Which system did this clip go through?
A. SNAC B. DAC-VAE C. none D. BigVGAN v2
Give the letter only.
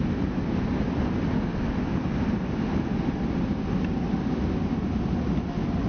C